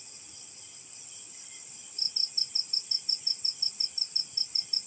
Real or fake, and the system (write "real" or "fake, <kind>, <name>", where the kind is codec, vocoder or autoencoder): real